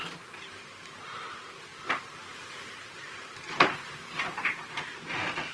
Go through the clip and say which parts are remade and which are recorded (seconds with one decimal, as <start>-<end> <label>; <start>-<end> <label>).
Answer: 0.0-1.2 remade; 1.2-1.7 recorded; 1.7-5.0 remade; 5.0-5.5 recorded

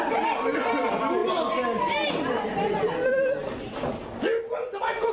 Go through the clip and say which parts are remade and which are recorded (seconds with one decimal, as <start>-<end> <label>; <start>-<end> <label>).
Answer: 0.0-5.1 recorded

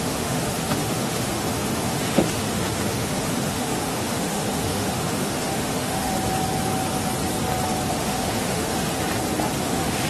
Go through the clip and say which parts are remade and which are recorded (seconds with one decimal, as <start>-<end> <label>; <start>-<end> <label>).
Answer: 0.0-6.1 remade; 6.1-7.9 recorded; 7.9-8.9 remade; 8.9-9.6 recorded; 9.6-10.1 remade

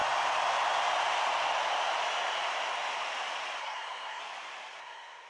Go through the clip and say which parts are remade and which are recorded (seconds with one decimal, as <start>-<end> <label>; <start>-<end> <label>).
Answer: 0.0-3.6 recorded; 3.6-4.2 remade; 4.2-4.8 recorded; 4.8-5.3 remade

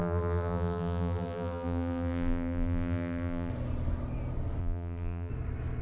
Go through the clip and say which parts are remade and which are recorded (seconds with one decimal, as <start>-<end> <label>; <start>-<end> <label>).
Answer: 0.0-3.5 remade; 3.5-4.6 recorded; 4.6-5.3 remade; 5.3-5.8 recorded

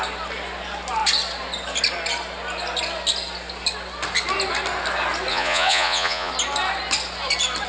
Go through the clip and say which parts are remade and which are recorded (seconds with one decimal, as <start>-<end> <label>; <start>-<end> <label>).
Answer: 0.0-5.3 recorded; 5.3-6.3 remade; 6.3-7.7 recorded

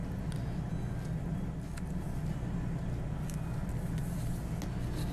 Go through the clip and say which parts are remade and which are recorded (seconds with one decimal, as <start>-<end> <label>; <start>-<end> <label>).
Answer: 0.0-5.1 recorded

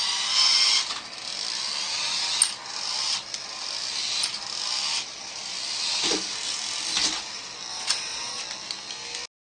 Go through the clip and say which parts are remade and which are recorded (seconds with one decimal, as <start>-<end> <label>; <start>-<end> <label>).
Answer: 0.0-7.7 recorded; 7.7-8.4 remade; 8.4-9.5 recorded